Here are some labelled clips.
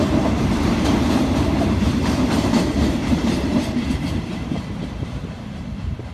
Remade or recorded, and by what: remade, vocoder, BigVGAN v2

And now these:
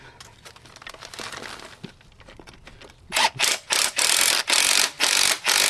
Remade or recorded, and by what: recorded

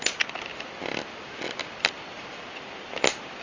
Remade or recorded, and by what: recorded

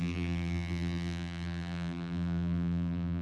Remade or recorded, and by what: remade, vocoder, BigVGAN v2